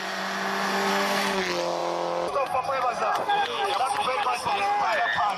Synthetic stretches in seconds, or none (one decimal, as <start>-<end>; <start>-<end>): 0.9-1.4